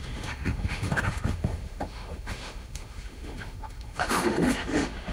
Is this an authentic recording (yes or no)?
no